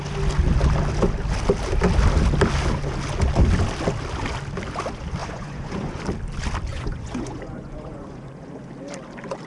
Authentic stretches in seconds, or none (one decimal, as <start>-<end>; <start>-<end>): 0.0-5.2; 6.0-6.7; 8.5-9.5